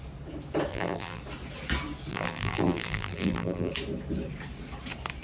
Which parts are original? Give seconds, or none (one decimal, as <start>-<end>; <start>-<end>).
0.0-0.7; 1.2-2.1; 3.7-5.2